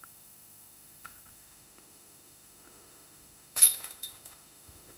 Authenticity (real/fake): fake